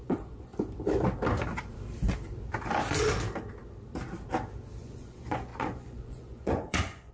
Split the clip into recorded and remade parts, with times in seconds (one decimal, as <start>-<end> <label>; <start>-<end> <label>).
0.0-0.5 remade; 0.5-4.8 recorded; 4.8-7.1 remade